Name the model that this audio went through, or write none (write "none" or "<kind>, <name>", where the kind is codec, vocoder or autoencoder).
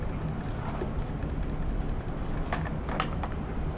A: none